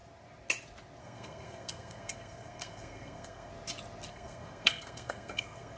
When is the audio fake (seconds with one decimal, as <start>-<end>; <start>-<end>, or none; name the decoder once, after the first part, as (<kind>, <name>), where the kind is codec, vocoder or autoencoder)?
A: 1.0-3.5 (codec, SNAC); 4.1-5.8